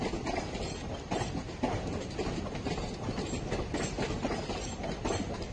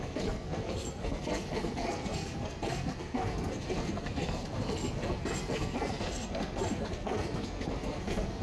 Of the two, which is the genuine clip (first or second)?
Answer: first